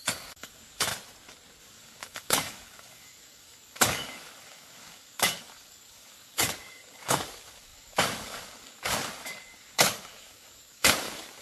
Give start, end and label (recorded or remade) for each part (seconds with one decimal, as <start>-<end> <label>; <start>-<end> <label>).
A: 0.0-0.9 remade; 0.9-1.6 recorded; 1.6-11.4 remade